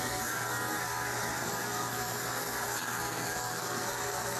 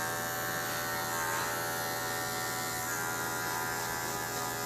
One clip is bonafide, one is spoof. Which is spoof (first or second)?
first